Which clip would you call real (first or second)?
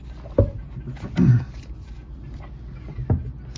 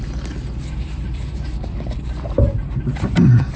first